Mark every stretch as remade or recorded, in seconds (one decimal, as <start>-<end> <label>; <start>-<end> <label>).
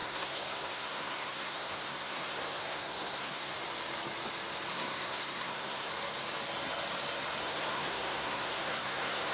0.0-3.6 remade; 3.6-4.7 recorded; 4.7-5.9 remade; 5.9-7.4 recorded; 7.4-9.3 remade